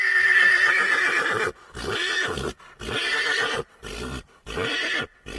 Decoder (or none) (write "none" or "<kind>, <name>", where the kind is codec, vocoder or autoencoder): none